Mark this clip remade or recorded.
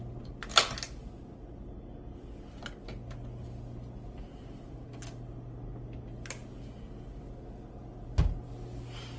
recorded